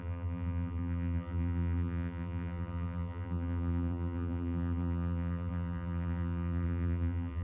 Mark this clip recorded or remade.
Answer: remade